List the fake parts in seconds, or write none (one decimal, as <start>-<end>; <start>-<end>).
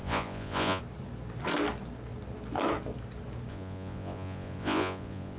0.0-0.8; 3.5-5.4